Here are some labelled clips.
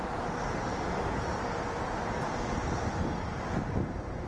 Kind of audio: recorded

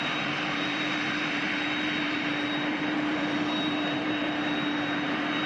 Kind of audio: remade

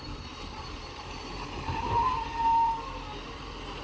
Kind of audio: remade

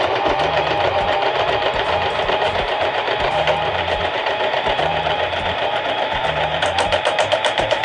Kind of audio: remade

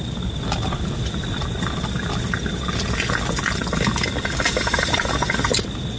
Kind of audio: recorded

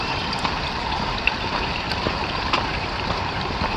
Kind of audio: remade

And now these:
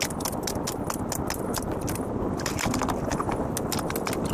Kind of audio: recorded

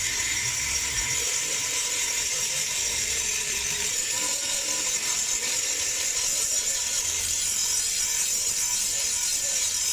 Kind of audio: remade